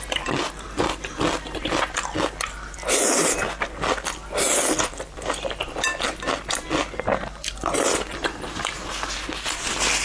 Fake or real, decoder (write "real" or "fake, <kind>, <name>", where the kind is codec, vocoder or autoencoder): real